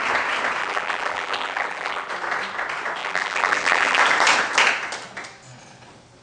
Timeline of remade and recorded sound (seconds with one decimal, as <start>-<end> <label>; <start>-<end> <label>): 0.0-0.6 recorded; 0.6-2.1 remade; 2.1-3.0 recorded; 3.0-4.0 remade; 4.0-6.2 recorded